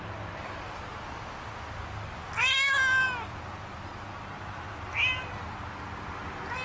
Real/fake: real